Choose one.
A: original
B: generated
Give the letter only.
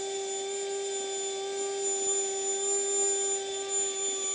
A